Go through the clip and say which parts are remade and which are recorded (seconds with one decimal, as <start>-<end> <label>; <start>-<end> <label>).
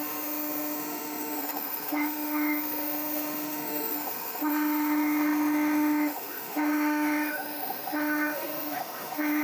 0.0-9.4 remade